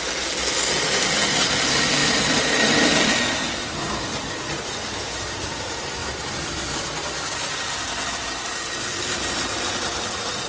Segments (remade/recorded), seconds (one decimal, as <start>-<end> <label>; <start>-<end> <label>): 0.0-2.0 recorded; 2.0-3.2 remade; 3.2-6.0 recorded; 6.0-7.7 remade; 7.7-10.5 recorded